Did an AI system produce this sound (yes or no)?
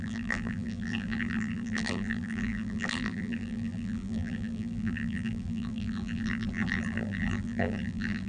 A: yes